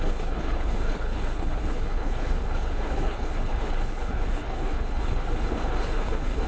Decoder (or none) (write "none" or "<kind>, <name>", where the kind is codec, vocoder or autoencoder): codec, HILCodec